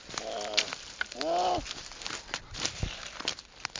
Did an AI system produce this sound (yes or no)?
no